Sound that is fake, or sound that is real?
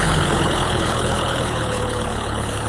fake